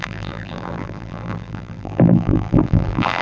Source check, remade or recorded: remade